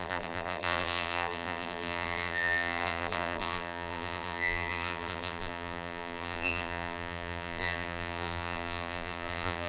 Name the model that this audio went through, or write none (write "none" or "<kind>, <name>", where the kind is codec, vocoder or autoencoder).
vocoder, BigVGAN v2